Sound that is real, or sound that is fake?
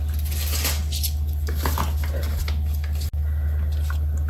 real